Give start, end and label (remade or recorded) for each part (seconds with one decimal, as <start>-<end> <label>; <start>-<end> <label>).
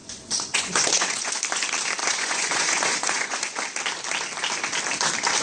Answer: 0.0-1.3 remade; 1.3-2.0 recorded; 2.0-3.6 remade; 3.6-5.4 recorded